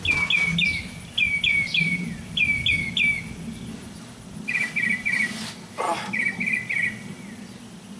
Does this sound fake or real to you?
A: real